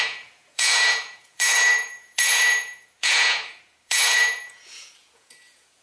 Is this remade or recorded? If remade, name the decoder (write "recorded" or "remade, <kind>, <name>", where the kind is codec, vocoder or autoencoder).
remade, vocoder, Vocos